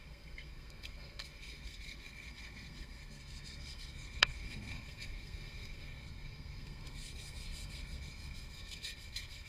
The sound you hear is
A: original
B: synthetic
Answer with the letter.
B